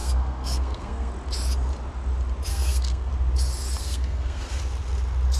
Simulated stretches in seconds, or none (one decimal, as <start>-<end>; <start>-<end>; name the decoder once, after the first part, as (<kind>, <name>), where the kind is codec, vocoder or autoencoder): 0.0-1.1 (codec, SNAC); 2.5-3.1; 3.8-4.6